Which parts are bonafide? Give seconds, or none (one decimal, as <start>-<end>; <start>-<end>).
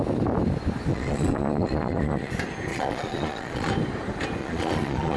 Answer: 0.0-0.9; 2.3-2.7; 3.7-4.4